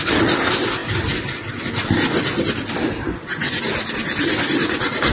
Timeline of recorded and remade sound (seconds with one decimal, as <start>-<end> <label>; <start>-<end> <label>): 0.0-5.1 recorded